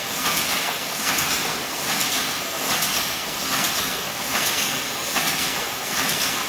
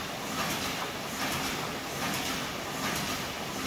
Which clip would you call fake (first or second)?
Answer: first